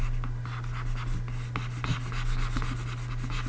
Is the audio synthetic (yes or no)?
no